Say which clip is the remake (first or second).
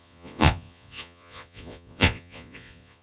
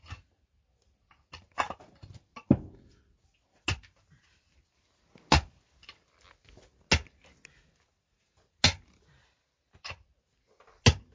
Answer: first